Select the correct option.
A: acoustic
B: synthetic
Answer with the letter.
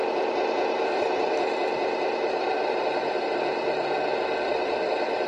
A